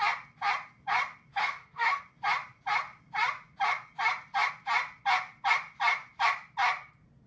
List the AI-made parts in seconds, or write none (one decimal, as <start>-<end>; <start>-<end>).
1.3-2.0